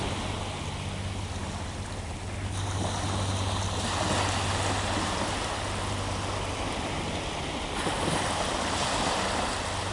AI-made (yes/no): no